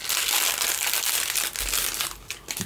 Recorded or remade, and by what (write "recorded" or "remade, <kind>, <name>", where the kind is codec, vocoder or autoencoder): recorded